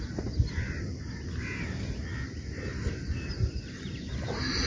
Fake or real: real